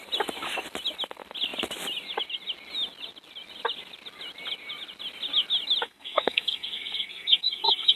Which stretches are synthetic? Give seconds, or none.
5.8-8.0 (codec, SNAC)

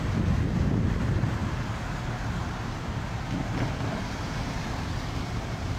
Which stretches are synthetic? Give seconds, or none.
none

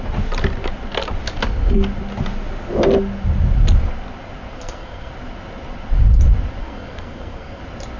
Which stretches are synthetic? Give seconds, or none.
4.5-5.1 (codec, SNAC); 6.6-7.6

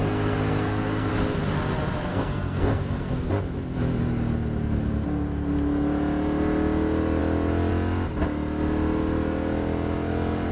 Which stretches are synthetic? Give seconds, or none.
0.0-1.1 (codec, SNAC); 2.1-3.3

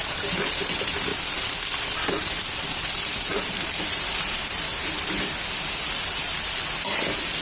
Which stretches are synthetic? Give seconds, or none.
1.1-4.5 (vocoder, BigVGAN v2)

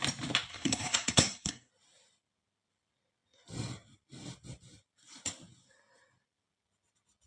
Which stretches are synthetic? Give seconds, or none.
0.5-1.7 (codec, SNAC)

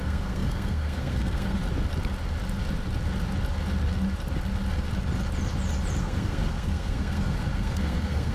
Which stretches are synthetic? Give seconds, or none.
0.0-1.6 (codec, SNAC); 6.0-8.3